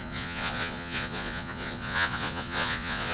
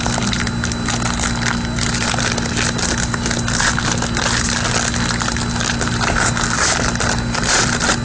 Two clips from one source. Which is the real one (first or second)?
second